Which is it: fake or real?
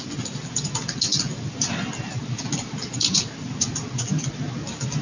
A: real